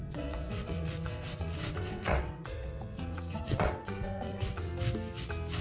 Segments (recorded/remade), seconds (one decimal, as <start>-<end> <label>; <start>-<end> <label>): 0.0-4.7 remade; 4.7-5.6 recorded